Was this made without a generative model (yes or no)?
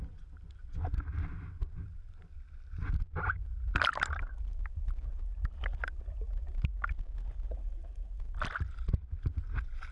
yes